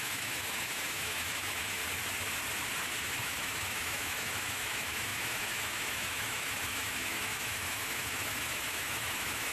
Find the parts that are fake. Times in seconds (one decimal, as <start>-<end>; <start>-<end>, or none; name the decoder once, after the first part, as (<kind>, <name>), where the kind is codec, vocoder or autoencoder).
0.0-1.8 (autoencoder, DAC-VAE); 3.0-9.5